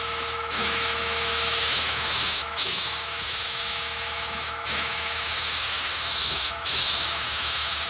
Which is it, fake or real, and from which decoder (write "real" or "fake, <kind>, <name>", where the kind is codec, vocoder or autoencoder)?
fake, autoencoder, DAC-VAE